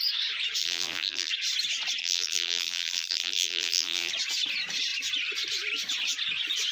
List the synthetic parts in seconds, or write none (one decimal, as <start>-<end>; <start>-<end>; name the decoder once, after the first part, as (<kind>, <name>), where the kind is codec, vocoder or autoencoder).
0.6-1.3 (vocoder, BigVGAN v2); 2.0-4.1